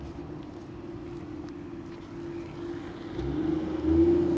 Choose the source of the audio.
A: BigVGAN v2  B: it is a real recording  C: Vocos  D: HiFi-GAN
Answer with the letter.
B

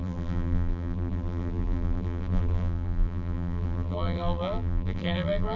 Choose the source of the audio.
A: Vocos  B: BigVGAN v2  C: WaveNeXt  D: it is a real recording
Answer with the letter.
B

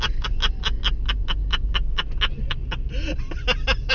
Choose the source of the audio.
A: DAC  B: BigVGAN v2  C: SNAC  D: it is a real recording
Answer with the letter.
D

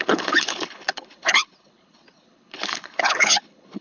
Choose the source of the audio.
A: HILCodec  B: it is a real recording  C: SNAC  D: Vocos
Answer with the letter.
A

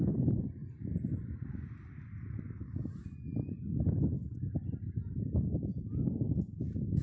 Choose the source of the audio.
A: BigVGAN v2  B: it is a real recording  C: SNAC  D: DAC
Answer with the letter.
B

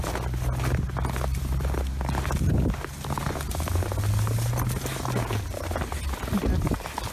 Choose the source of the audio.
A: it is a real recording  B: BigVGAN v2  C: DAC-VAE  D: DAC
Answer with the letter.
A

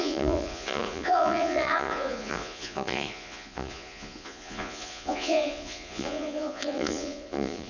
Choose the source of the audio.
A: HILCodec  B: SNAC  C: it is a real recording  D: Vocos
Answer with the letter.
D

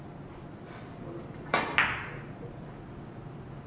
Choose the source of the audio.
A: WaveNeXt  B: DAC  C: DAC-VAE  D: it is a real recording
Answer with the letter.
D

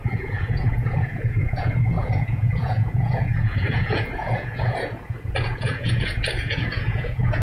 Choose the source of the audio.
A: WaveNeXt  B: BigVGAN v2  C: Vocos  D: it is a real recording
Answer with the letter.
C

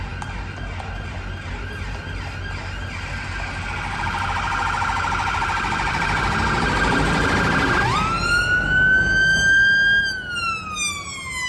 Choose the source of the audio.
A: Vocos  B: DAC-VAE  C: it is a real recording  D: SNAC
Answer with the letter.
C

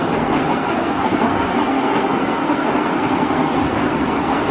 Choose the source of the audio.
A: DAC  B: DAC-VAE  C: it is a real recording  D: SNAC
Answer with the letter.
D